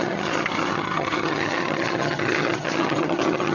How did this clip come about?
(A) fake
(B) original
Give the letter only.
A